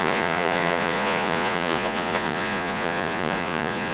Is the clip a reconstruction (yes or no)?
yes